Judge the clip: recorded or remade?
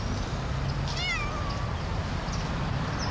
recorded